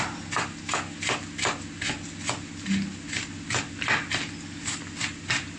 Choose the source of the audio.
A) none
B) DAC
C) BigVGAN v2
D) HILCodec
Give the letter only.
A